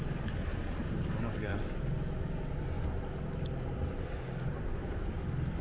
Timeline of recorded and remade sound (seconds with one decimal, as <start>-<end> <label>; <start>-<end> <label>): 0.0-5.6 recorded